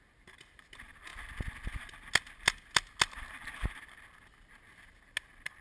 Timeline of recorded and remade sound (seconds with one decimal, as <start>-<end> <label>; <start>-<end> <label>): 0.0-5.6 recorded